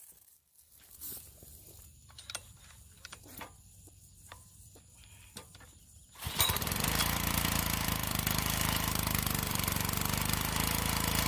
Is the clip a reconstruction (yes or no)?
yes